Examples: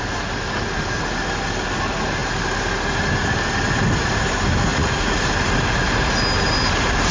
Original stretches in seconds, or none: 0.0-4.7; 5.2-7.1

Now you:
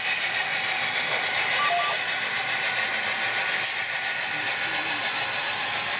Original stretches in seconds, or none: 0.0-6.0